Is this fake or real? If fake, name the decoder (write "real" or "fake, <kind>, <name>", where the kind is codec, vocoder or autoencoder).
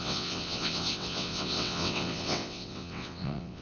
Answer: fake, vocoder, WaveNeXt